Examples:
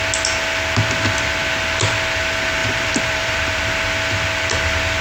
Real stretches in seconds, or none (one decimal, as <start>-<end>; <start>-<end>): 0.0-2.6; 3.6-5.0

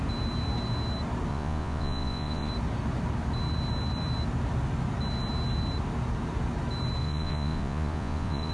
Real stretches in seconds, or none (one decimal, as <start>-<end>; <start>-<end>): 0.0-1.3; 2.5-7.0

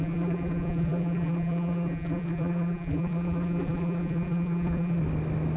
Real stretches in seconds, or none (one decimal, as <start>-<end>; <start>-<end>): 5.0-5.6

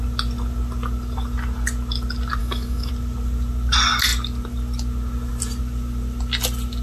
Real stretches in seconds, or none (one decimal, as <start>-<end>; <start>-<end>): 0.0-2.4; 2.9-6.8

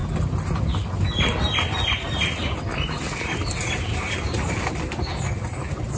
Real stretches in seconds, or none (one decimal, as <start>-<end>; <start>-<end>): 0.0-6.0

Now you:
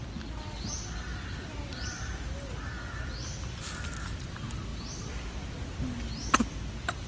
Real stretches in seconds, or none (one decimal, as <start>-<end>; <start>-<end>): 0.0-7.1

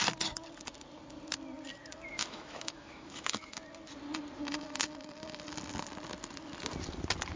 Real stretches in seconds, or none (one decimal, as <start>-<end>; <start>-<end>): 0.0-2.2; 3.6-7.4